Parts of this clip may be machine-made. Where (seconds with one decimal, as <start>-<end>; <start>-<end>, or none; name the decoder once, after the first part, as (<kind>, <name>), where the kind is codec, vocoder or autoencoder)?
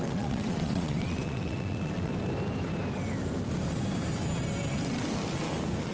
0.0-2.1 (vocoder, WaveNeXt)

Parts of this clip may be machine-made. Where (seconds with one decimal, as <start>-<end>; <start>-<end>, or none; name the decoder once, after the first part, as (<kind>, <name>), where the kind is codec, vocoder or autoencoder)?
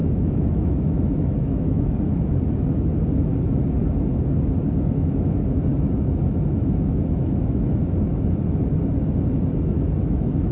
0.0-2.9 (autoencoder, DAC-VAE); 4.4-8.1; 10.0-10.5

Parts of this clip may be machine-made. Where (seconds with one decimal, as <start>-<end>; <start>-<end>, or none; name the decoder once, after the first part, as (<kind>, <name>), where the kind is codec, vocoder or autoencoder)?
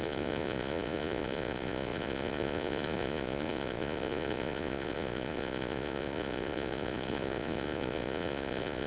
0.0-8.9 (vocoder, Vocos)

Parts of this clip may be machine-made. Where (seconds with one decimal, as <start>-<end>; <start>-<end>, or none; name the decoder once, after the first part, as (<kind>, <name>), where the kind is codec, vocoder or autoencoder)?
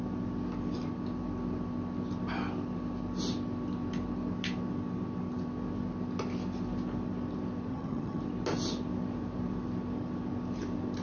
7.7-8.2 (vocoder, HiFi-GAN)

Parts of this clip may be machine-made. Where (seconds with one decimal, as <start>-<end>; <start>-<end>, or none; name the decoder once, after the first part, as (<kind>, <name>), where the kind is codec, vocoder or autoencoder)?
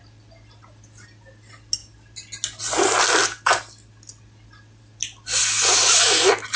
none